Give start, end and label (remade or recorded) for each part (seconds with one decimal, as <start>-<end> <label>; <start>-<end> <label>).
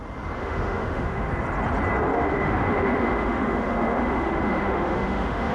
0.0-0.4 recorded; 0.4-1.3 remade; 1.3-2.1 recorded; 2.1-5.5 remade